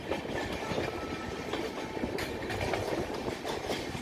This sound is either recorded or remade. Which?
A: recorded